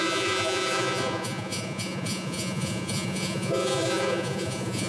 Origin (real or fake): fake